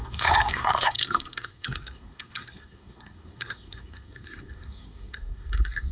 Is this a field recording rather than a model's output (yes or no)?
no